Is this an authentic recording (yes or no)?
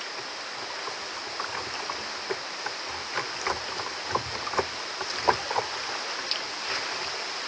yes